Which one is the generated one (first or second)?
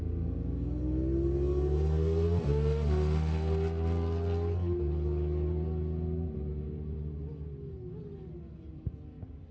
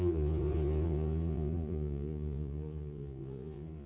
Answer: second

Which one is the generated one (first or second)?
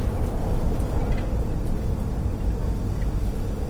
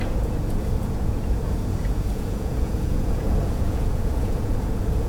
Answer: second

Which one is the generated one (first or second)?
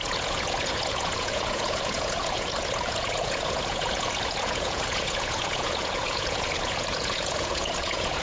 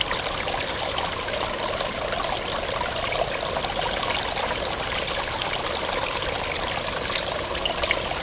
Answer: first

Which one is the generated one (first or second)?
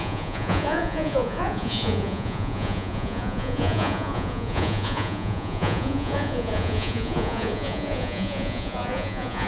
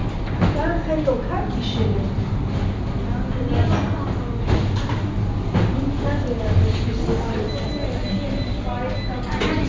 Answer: first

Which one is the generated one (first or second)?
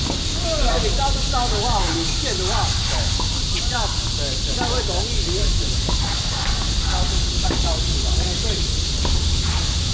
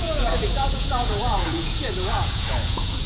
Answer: second